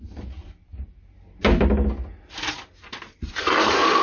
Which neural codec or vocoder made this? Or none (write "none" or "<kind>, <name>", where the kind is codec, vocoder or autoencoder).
none